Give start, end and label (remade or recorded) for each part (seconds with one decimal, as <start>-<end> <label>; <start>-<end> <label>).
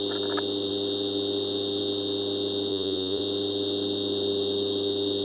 0.0-2.7 recorded; 2.7-3.2 remade; 3.2-5.2 recorded